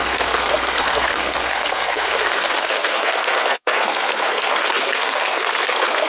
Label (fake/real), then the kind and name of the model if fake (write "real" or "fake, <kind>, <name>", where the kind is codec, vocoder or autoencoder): fake, codec, SNAC